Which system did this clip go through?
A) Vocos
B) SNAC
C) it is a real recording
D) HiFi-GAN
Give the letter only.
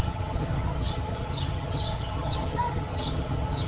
D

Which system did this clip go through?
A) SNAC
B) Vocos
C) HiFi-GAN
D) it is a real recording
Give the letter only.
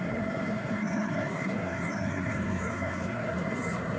A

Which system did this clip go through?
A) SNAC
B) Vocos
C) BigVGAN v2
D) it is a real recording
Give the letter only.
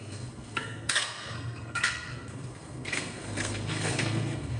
A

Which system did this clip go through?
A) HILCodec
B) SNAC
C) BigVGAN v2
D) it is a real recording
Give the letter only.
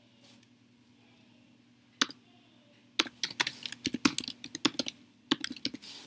D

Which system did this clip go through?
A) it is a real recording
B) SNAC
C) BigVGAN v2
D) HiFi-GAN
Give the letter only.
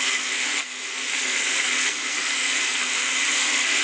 B